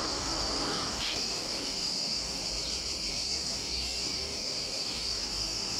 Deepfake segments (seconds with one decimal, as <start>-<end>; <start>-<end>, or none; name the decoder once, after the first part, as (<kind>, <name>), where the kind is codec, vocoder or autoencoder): 0.0-2.4 (codec, DAC); 3.1-5.8